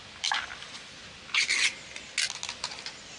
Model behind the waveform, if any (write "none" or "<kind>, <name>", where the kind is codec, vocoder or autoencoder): none